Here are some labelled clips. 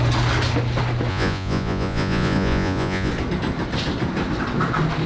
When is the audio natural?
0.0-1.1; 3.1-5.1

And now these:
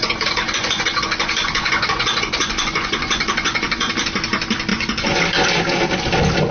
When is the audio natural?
3.9-4.7; 5.2-6.5

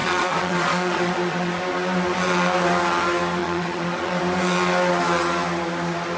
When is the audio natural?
1.6-3.4; 4.2-6.2

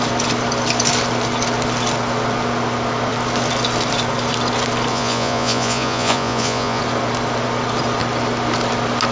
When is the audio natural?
0.0-4.9; 6.8-9.1

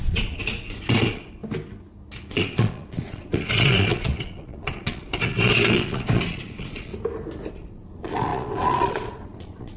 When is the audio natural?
1.4-2.3; 6.9-7.5